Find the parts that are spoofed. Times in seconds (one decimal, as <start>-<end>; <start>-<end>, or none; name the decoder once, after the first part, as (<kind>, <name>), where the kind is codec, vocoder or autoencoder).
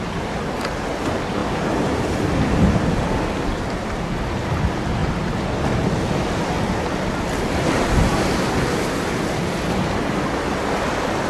none